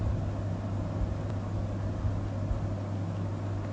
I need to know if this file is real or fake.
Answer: real